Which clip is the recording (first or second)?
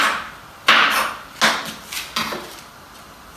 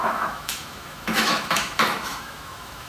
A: first